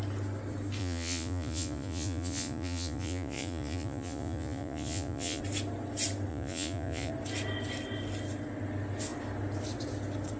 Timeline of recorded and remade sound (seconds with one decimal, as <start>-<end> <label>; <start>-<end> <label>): 0.0-0.8 recorded; 0.8-5.4 remade; 5.4-6.3 recorded; 6.3-7.1 remade; 7.1-10.4 recorded